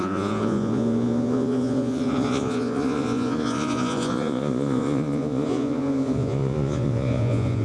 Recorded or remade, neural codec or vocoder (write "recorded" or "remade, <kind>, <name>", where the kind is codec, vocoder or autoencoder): remade, vocoder, Vocos